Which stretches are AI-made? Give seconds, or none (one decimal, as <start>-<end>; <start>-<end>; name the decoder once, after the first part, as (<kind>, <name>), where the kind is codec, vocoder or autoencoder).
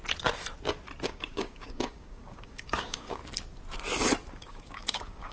1.0-3.2 (codec, DAC); 4.3-5.3